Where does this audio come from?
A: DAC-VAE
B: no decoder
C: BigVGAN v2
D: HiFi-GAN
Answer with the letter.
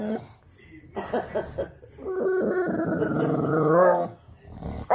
B